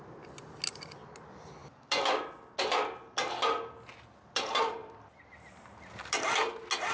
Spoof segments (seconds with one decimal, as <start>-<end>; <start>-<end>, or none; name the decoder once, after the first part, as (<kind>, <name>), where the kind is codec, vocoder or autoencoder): none